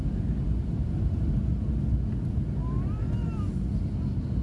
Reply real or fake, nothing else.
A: real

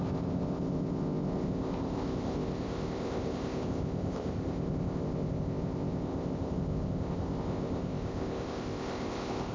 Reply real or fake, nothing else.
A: fake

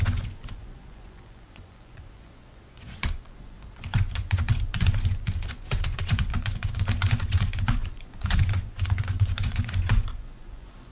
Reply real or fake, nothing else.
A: fake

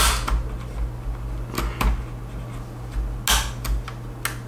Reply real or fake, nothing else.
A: real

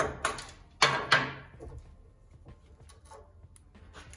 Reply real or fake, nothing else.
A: real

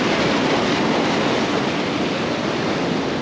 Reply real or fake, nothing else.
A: real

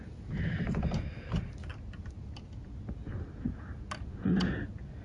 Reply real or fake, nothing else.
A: real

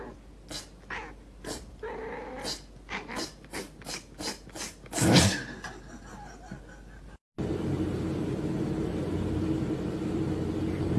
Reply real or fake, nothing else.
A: real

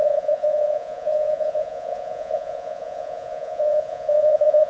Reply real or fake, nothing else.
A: fake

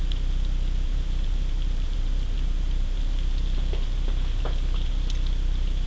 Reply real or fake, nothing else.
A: real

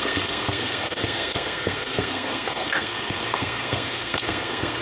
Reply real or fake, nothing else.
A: fake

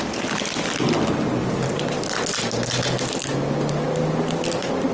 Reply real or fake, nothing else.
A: real